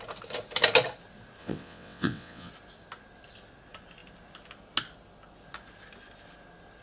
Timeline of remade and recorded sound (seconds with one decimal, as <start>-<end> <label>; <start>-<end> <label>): 0.0-1.4 recorded; 1.4-2.5 remade; 2.5-6.8 recorded